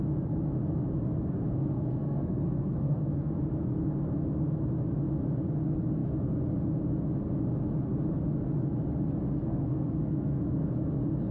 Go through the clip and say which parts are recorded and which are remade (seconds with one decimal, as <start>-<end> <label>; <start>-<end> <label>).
0.0-1.6 recorded; 1.6-3.3 remade; 3.3-9.5 recorded; 9.5-10.4 remade; 10.4-11.3 recorded